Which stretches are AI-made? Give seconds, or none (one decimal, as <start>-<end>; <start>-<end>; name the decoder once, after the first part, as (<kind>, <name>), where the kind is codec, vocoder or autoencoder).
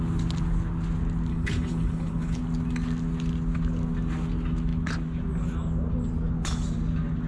1.3-2.4 (codec, HILCodec)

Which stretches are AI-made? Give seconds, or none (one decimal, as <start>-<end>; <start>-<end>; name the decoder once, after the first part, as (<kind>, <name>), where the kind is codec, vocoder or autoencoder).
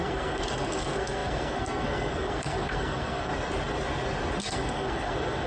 0.0-3.3 (codec, SNAC); 4.4-5.5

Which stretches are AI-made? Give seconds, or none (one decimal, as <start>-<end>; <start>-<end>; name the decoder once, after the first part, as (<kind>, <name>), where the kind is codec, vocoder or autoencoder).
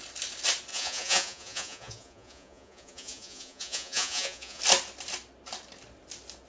0.7-4.6 (vocoder, Vocos)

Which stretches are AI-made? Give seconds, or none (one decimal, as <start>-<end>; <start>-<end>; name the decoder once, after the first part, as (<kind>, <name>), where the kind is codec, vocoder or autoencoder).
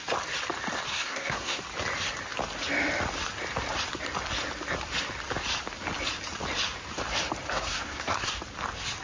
0.9-1.6 (codec, SNAC); 7.5-8.3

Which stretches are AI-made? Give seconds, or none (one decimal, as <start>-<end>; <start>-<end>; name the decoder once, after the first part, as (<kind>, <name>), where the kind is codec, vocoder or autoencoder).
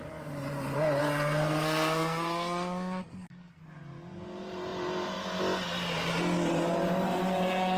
1.0-3.6 (codec, SNAC)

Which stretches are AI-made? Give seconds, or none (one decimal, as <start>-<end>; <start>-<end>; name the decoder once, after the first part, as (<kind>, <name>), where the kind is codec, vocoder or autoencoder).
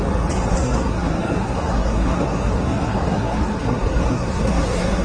0.5-5.0 (codec, SNAC)